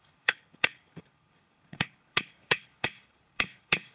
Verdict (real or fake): fake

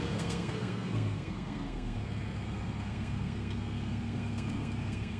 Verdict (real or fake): fake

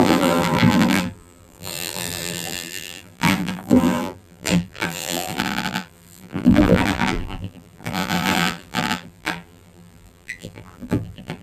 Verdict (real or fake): fake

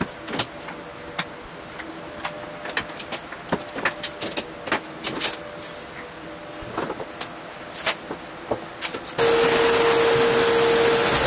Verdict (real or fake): real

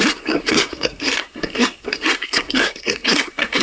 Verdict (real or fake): fake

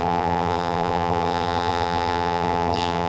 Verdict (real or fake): fake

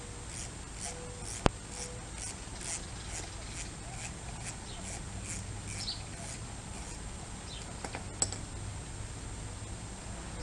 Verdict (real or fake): real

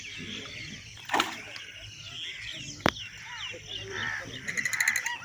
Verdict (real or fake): real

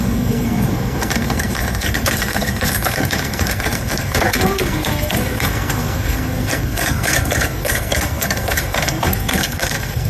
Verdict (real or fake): fake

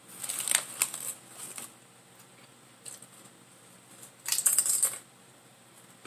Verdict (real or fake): real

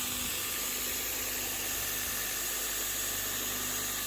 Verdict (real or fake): real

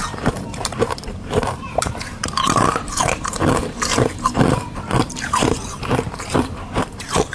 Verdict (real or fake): fake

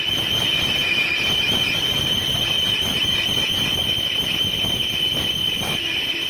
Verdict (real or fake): real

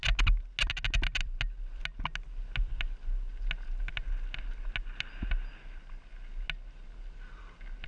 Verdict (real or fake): real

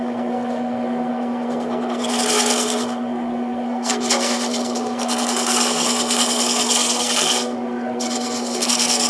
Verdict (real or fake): fake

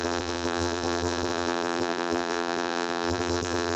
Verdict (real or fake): fake